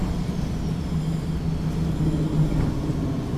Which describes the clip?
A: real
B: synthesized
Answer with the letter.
A